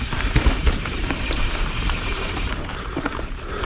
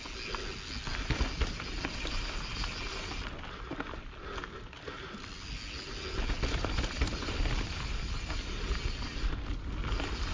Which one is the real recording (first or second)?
second